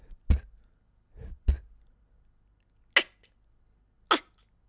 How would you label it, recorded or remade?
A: recorded